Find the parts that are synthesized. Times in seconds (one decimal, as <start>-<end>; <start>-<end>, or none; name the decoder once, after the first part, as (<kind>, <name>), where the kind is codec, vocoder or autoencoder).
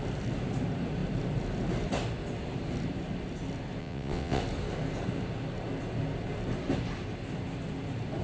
3.8-4.4 (vocoder, WaveNeXt)